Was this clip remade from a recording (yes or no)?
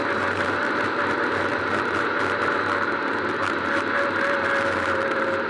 yes